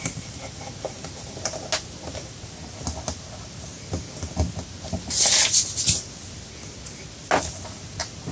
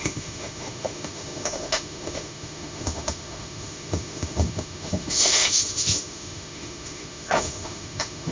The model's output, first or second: second